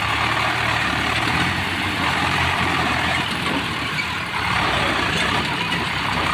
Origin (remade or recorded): remade